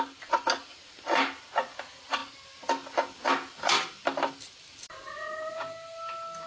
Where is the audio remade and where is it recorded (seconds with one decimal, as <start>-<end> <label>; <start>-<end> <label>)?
0.0-6.5 recorded